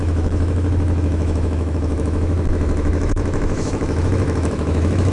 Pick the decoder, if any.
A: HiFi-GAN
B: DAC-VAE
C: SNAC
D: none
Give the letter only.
B